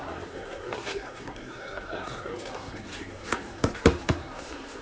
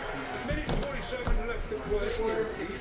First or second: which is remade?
first